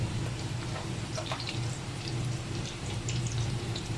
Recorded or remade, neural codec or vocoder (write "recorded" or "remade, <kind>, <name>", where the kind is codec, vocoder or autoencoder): remade, vocoder, BigVGAN v2